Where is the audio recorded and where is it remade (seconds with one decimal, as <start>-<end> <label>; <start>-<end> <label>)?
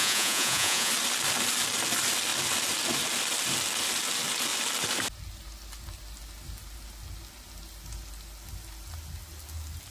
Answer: 0.0-0.9 remade; 0.9-9.9 recorded